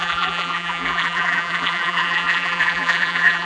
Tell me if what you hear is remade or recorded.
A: remade